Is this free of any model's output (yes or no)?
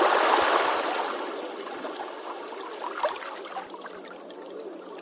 yes